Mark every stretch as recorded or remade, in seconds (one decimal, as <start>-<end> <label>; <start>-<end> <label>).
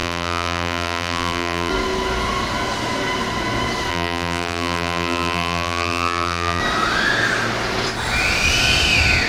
0.0-1.7 remade; 1.7-3.9 recorded; 3.9-6.6 remade; 6.6-9.3 recorded